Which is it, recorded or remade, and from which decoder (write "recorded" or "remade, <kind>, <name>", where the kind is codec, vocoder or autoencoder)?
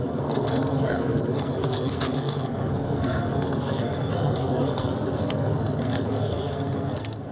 remade, codec, SNAC